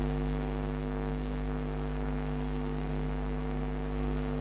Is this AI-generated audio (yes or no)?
yes